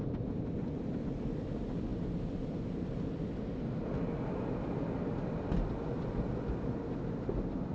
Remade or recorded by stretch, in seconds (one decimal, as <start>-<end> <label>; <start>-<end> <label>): 0.0-7.7 recorded